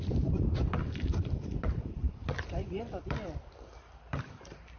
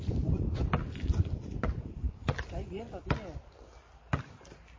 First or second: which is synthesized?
first